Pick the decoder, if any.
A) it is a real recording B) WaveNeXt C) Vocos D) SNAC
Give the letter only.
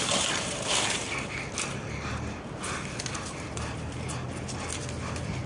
A